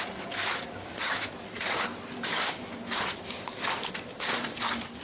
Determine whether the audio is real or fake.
fake